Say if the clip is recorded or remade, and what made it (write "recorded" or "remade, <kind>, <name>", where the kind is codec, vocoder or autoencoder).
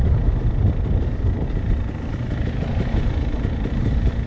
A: recorded